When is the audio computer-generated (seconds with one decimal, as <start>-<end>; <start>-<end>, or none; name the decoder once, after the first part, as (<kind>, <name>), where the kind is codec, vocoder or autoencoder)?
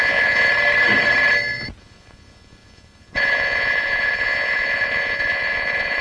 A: 0.0-0.5 (vocoder, Vocos); 1.8-6.0